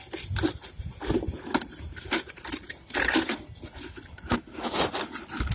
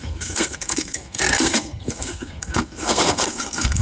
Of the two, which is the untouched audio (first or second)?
first